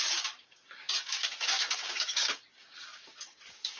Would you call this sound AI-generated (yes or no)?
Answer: yes